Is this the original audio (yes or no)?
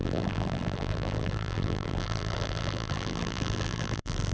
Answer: no